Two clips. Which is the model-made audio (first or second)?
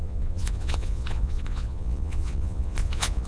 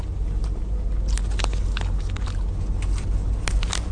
first